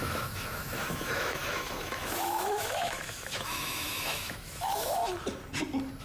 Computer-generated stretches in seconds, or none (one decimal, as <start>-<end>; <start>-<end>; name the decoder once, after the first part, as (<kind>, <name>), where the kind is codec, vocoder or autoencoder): 0.0-5.0 (autoencoder, DAC-VAE)